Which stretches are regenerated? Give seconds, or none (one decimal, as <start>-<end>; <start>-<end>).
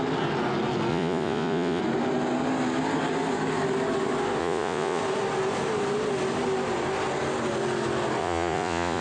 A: 0.9-1.8; 4.4-5.0; 8.2-9.0